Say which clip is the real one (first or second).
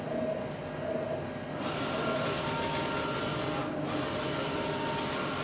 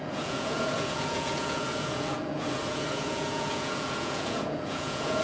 first